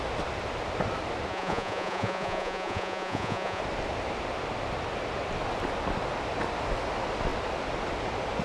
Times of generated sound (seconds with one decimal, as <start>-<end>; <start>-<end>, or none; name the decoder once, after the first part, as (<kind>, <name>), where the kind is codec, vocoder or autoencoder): 1.3-3.6 (vocoder, Vocos)